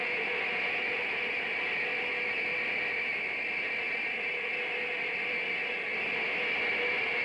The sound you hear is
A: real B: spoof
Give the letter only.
A